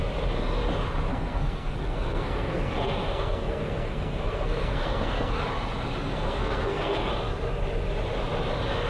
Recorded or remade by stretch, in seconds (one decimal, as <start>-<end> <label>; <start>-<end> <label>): 0.0-1.1 recorded; 1.1-5.4 remade; 5.4-6.1 recorded; 6.1-7.1 remade; 7.1-8.9 recorded